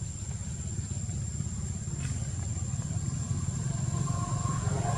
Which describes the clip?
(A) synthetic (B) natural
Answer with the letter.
B